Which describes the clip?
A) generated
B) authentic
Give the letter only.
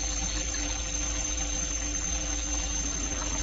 A